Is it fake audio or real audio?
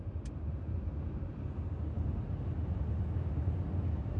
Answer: real